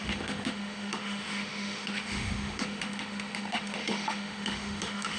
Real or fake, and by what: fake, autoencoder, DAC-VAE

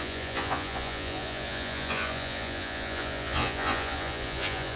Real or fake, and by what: fake, vocoder, Vocos